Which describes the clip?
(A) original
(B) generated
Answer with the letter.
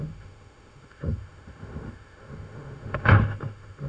B